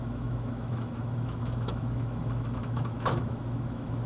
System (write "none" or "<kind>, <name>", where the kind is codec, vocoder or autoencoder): autoencoder, DAC-VAE